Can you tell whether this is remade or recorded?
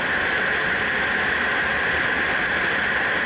recorded